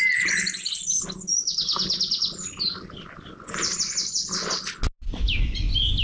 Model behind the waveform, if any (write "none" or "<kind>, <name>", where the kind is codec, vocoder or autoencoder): none